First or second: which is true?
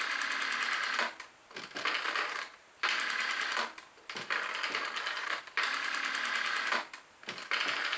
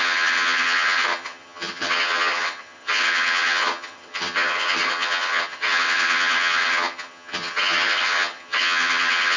first